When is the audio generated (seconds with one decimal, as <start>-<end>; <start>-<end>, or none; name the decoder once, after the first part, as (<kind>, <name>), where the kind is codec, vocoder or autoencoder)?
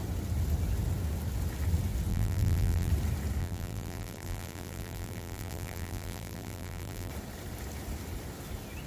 2.1-2.9 (vocoder, BigVGAN v2); 3.4-7.1